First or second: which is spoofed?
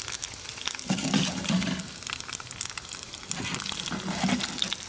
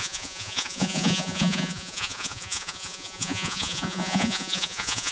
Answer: second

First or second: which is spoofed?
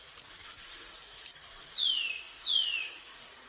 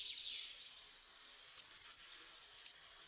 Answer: first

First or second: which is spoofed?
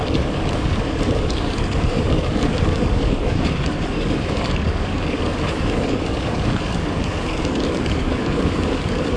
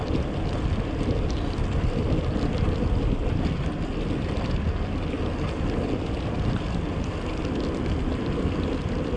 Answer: first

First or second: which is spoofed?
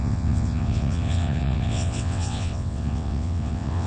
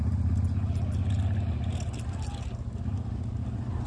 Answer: first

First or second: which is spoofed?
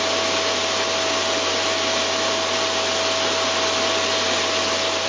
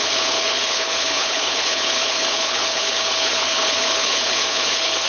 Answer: second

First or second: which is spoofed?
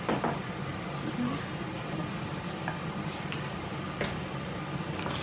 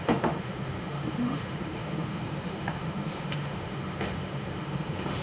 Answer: second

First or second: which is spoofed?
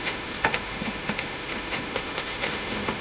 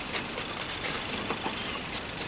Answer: first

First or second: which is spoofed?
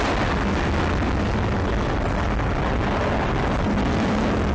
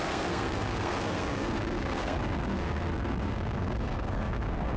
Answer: second